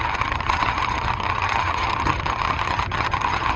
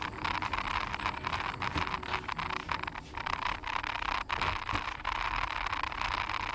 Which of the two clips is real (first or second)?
second